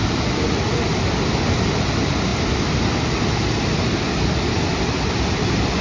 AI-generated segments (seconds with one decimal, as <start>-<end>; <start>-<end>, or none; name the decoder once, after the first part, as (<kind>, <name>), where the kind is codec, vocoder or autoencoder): none